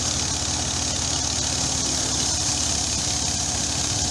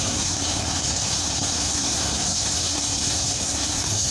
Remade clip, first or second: second